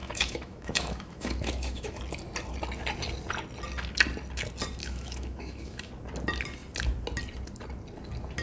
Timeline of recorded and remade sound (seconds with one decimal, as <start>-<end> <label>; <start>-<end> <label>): 0.0-2.0 remade; 2.0-4.8 recorded; 4.8-5.9 remade; 5.9-8.4 recorded